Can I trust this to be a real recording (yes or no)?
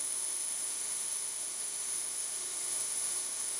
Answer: no